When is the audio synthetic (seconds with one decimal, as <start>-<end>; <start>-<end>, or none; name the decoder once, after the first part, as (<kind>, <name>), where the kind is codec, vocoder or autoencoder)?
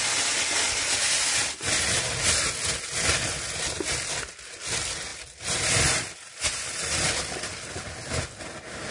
none